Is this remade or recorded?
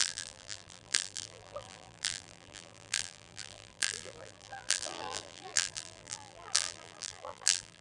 remade